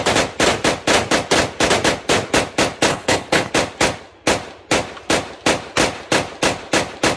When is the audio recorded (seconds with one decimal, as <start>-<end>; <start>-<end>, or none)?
0.0-2.9; 3.5-7.2